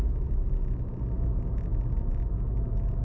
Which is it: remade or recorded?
recorded